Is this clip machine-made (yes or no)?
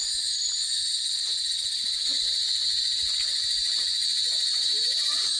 no